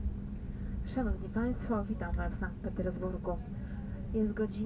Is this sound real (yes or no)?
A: yes